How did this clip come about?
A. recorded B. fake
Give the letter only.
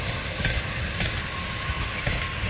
A